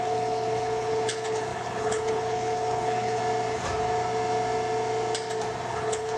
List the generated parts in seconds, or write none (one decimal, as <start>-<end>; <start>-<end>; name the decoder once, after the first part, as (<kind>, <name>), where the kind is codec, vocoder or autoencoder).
0.0-3.2 (codec, HILCodec); 5.7-6.2